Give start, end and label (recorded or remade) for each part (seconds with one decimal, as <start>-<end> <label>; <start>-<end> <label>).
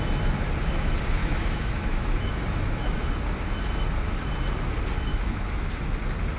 0.0-1.2 recorded; 1.2-3.1 remade; 3.1-5.1 recorded; 5.1-5.7 remade; 5.7-6.4 recorded